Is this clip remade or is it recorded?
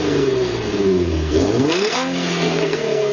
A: remade